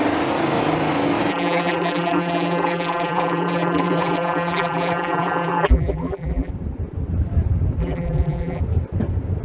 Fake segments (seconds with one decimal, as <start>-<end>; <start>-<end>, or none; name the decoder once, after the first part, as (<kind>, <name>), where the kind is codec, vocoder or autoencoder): 1.3-6.5 (vocoder, BigVGAN v2); 7.8-8.6